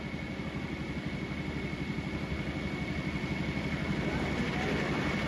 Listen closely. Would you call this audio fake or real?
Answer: real